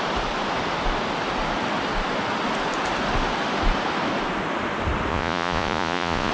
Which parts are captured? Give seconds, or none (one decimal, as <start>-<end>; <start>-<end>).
0.0-5.1